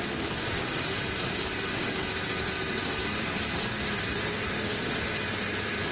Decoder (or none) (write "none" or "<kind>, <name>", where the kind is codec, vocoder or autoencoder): none